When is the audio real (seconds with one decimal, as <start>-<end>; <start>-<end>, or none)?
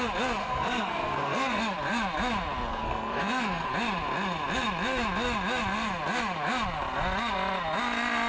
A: 0.0-0.4; 1.6-2.7; 3.7-8.3